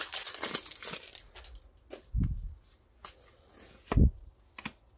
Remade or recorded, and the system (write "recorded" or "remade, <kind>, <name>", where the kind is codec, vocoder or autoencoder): recorded